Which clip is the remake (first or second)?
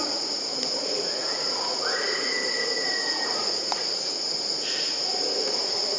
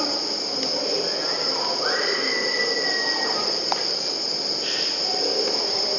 first